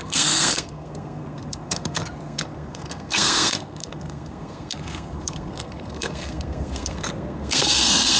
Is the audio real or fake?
fake